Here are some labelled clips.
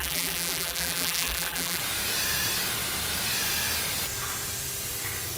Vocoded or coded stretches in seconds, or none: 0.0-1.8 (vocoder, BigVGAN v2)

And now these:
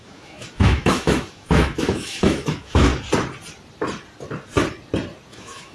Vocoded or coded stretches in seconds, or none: 0.0-2.9 (autoencoder, DAC-VAE); 5.3-5.7